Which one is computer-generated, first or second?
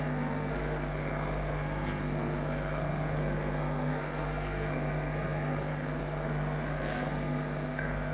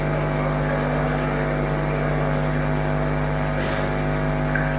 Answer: first